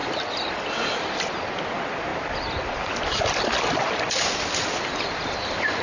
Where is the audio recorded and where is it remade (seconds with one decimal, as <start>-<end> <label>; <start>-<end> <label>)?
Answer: 0.0-1.3 remade; 1.3-2.1 recorded; 2.1-4.0 remade; 4.0-5.8 recorded